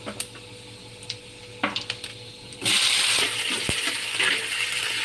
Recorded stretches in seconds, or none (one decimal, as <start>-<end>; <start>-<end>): 0.0-2.1; 4.4-5.0